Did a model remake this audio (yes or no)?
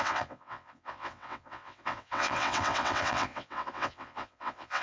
yes